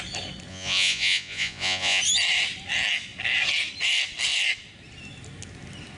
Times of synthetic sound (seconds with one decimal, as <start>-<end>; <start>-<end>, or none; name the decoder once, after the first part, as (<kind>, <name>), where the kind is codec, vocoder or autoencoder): 0.5-2.0 (vocoder, Vocos)